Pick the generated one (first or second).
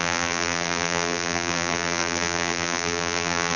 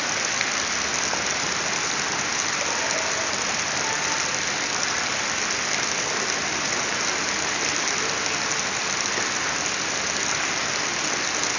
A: first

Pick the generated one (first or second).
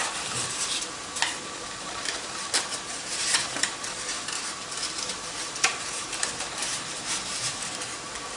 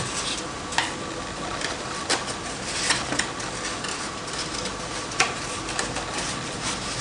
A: first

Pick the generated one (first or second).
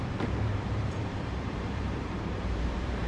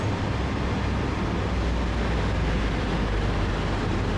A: first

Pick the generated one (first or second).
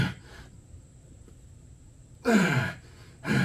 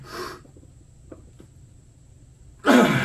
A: first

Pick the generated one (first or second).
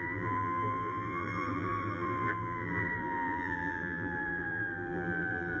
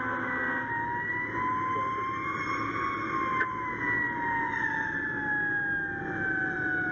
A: first